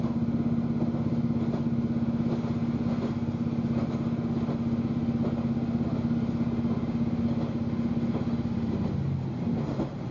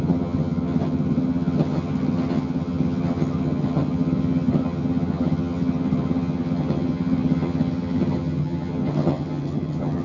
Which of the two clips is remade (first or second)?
second